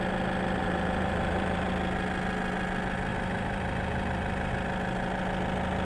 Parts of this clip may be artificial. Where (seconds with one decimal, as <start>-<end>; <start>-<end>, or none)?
0.6-1.7; 3.1-4.5